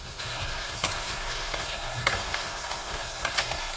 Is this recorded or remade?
remade